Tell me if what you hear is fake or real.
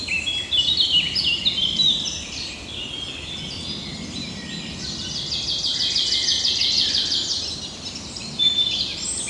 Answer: real